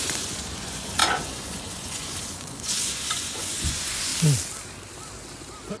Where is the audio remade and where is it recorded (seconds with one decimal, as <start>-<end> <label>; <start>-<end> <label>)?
0.0-4.1 remade; 4.1-5.8 recorded